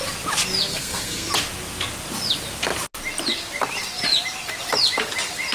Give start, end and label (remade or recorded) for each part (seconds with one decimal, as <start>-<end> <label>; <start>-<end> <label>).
0.0-0.7 recorded; 0.7-1.3 remade; 1.3-5.5 recorded